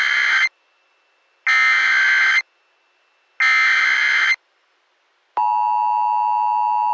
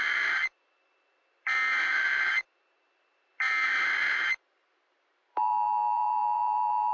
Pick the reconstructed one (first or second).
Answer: second